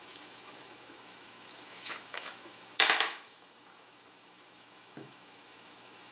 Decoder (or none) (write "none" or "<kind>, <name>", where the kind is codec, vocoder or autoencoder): autoencoder, DAC-VAE